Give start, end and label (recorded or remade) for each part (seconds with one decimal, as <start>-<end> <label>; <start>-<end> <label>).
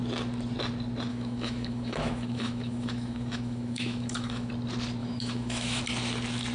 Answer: 0.0-1.1 recorded; 1.1-4.5 remade; 4.5-5.0 recorded; 5.0-5.8 remade; 5.8-6.5 recorded